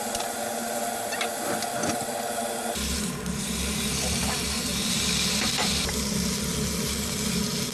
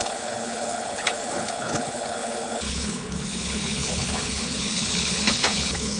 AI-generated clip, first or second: second